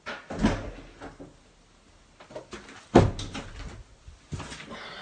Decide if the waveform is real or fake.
real